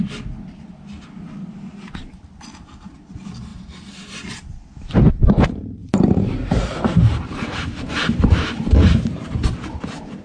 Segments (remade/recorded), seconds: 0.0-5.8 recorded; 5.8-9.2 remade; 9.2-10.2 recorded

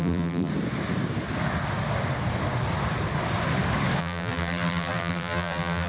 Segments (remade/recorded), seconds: 0.0-0.5 remade; 0.5-4.0 recorded; 4.0-5.9 remade